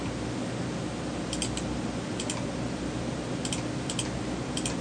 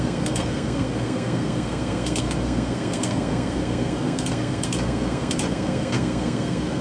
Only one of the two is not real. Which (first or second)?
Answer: second